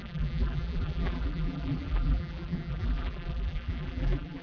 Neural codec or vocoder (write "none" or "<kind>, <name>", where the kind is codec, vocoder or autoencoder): vocoder, BigVGAN v2